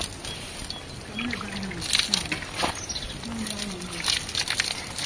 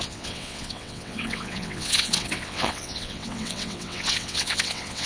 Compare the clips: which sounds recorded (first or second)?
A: first